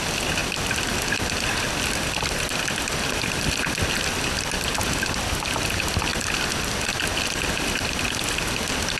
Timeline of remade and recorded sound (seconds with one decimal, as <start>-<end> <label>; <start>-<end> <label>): 0.0-9.0 recorded